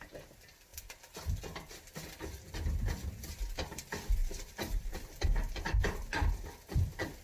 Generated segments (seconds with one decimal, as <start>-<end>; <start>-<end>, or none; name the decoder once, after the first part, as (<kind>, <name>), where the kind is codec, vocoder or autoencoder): 4.2-6.8 (vocoder, BigVGAN v2)